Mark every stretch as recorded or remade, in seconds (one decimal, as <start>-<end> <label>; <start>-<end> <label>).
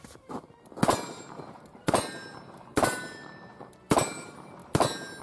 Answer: 0.0-4.6 remade; 4.6-5.2 recorded